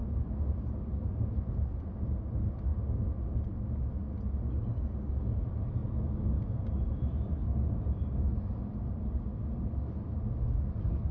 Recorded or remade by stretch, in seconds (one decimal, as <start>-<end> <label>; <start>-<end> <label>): 0.0-11.1 recorded